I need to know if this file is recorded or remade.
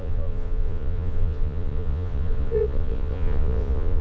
remade